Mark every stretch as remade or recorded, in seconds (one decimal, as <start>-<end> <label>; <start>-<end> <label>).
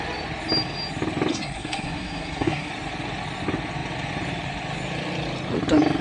0.0-1.3 recorded; 1.3-2.7 remade; 2.7-6.0 recorded